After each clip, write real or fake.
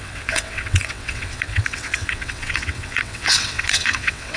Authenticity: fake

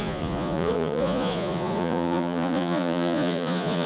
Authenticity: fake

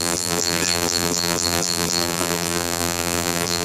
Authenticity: fake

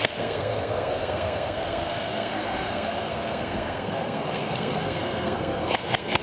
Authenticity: fake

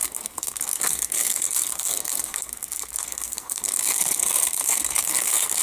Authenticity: fake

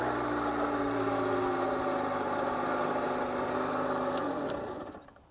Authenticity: real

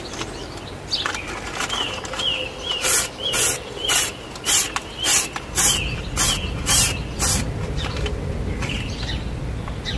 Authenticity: real